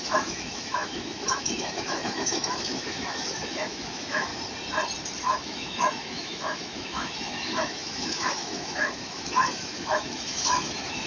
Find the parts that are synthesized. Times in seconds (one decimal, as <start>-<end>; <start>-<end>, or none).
0.0-4.3; 5.2-11.1